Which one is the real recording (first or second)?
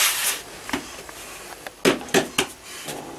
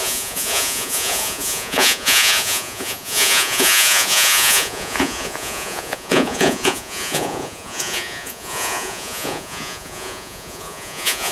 first